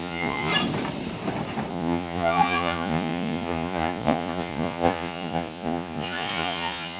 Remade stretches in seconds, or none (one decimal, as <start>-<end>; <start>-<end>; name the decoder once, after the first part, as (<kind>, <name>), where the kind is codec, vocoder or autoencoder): 0.0-0.5 (vocoder, Vocos); 1.7-7.0